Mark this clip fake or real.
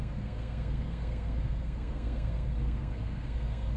fake